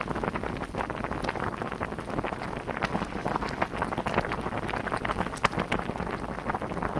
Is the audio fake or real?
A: real